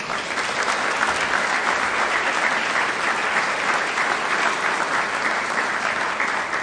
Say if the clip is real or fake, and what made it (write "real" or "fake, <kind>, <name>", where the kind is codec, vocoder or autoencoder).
real